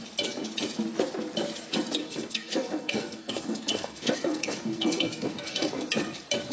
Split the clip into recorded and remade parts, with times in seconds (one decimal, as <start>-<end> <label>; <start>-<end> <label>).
0.0-2.0 recorded; 2.0-5.9 remade; 5.9-6.5 recorded